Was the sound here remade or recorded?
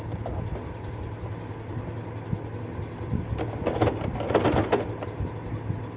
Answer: recorded